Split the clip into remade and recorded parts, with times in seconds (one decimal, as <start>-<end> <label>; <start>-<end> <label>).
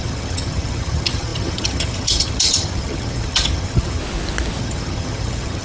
0.0-4.0 remade; 4.0-4.6 recorded; 4.6-5.6 remade